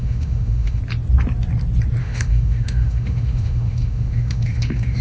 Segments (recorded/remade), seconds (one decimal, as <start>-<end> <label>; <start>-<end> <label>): 0.0-0.8 remade; 0.8-2.0 recorded; 2.0-5.0 remade

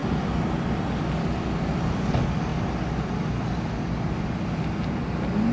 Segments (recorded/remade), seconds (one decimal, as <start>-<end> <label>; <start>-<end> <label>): 0.0-5.5 recorded